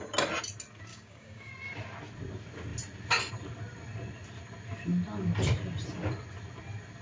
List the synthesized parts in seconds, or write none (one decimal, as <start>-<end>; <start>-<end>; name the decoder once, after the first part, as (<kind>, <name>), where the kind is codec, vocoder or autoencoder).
0.9-1.5 (codec, DAC)

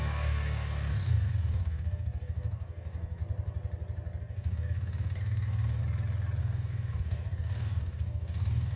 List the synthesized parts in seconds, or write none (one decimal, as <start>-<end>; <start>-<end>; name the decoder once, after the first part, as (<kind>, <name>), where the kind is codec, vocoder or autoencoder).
0.0-3.2 (codec, DAC); 4.2-5.8; 6.4-8.8